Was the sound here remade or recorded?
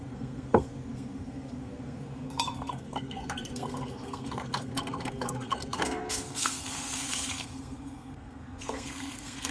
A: remade